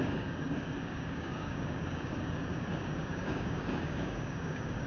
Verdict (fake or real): fake